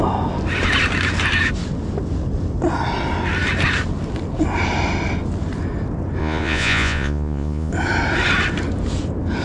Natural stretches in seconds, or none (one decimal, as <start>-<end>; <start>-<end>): 0.0-6.2; 7.7-9.4